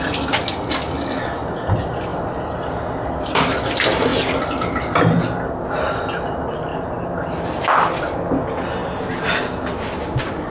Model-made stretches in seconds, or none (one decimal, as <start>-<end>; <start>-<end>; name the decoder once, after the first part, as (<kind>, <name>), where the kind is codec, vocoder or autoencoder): 2.1-3.5 (vocoder, BigVGAN v2); 6.7-7.6